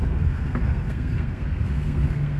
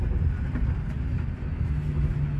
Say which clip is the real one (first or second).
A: second